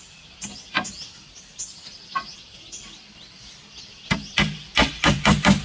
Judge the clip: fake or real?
fake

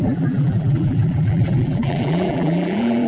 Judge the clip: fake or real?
fake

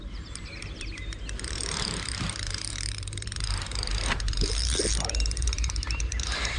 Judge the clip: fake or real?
fake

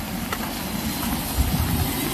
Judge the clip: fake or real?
real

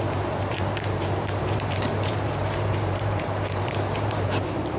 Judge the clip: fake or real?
fake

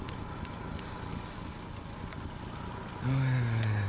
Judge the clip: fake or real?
real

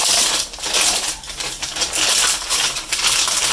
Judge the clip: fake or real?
real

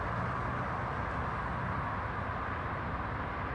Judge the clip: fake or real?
real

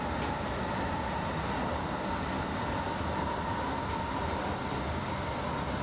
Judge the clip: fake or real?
real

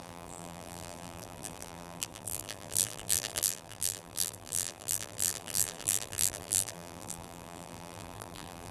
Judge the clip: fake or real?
fake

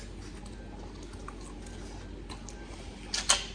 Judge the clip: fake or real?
real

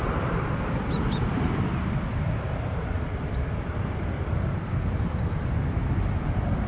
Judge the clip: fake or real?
fake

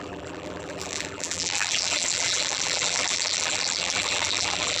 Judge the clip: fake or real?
fake